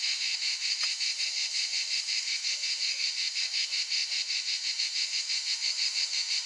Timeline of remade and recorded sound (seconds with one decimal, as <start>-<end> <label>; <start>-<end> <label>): 0.0-6.5 remade